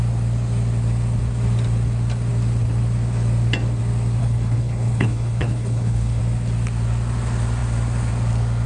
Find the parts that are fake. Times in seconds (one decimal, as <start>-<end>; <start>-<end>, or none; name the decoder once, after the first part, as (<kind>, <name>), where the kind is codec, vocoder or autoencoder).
4.2-6.2 (codec, HILCodec)